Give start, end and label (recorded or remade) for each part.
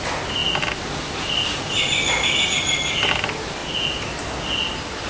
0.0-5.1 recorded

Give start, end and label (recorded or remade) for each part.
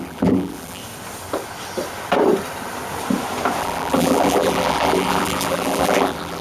0.0-0.8 remade; 0.8-3.6 recorded; 3.6-6.4 remade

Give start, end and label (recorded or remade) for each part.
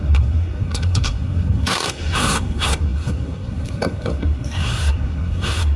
0.0-5.8 remade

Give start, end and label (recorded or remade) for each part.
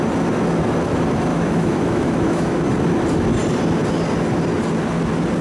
0.0-1.3 recorded; 1.3-2.6 remade; 2.6-5.4 recorded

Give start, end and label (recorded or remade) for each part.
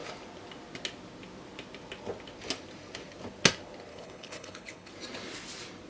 0.0-3.9 recorded; 3.9-4.9 remade; 4.9-5.9 recorded